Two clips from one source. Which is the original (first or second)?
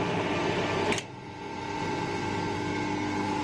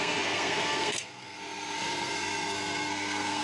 first